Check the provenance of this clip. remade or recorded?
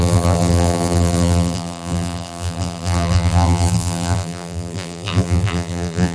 remade